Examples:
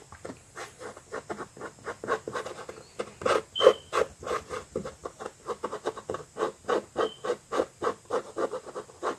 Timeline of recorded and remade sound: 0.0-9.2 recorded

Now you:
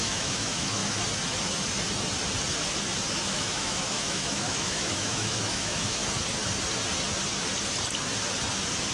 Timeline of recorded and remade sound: 0.0-0.8 remade; 0.8-3.1 recorded; 3.1-6.0 remade; 6.0-8.9 recorded

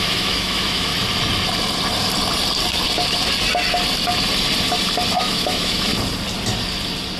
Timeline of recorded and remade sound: 0.0-0.9 remade; 0.9-5.2 recorded; 5.2-5.9 remade; 5.9-7.2 recorded

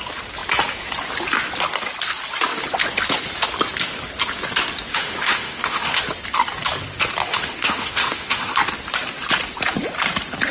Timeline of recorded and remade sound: 0.0-4.9 recorded; 4.9-6.0 remade; 6.0-7.3 recorded; 7.3-8.5 remade; 8.5-10.5 recorded

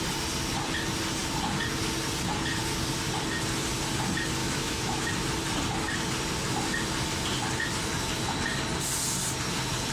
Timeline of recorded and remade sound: 0.0-4.4 recorded; 4.4-5.1 remade; 5.1-9.9 recorded

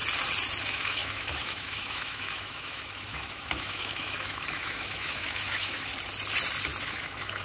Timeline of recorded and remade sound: 0.0-0.6 recorded; 0.6-5.9 remade; 5.9-6.8 recorded; 6.8-7.4 remade

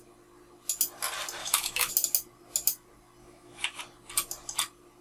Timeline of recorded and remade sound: 0.0-1.4 recorded; 1.4-1.9 remade; 1.9-3.2 recorded; 3.2-3.8 remade; 3.8-5.0 recorded

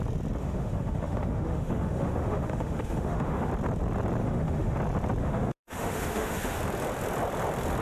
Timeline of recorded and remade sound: 0.0-0.4 recorded; 0.4-3.5 remade; 3.5-4.2 recorded; 4.2-4.8 remade; 4.8-5.2 recorded; 5.2-6.6 remade; 6.6-7.8 recorded